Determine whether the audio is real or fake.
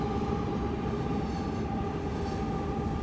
real